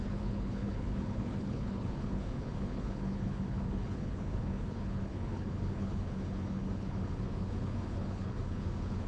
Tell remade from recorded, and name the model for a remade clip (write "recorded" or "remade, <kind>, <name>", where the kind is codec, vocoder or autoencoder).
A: remade, codec, HILCodec